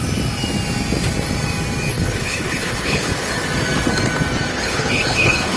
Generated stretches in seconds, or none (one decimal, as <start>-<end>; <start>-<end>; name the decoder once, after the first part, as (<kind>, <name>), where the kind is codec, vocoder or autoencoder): 1.9-3.3 (codec, HILCodec); 4.5-5.6